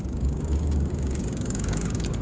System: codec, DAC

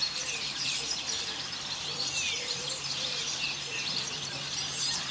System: vocoder, BigVGAN v2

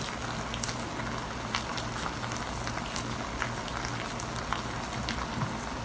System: none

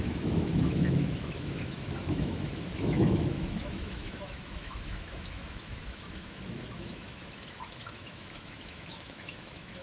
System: autoencoder, DAC-VAE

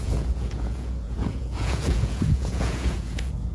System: vocoder, Vocos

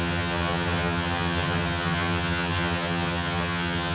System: vocoder, HiFi-GAN